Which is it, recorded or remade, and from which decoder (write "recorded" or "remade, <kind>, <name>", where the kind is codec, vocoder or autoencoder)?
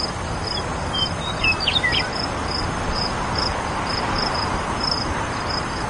remade, vocoder, BigVGAN v2